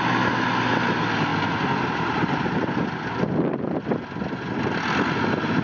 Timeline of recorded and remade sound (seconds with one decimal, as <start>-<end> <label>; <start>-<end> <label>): 0.0-5.6 recorded